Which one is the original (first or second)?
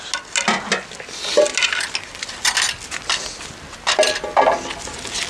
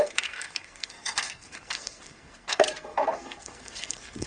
first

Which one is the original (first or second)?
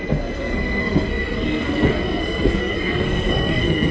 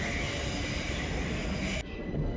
second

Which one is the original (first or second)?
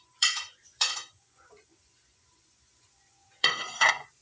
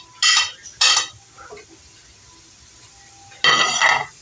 second